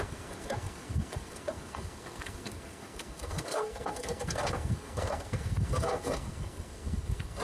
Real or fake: fake